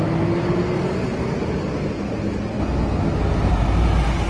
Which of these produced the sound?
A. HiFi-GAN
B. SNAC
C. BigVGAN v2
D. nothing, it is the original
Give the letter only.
D